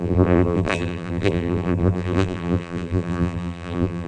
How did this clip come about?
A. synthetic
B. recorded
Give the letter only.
A